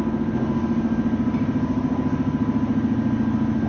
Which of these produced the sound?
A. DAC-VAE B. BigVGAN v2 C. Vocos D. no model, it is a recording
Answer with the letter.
D